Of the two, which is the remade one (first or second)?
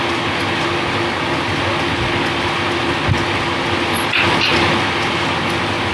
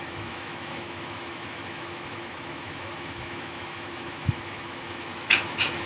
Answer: second